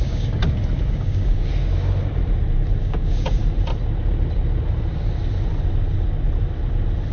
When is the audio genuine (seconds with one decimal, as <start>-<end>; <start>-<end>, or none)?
0.4-0.9; 1.5-2.8; 3.4-7.1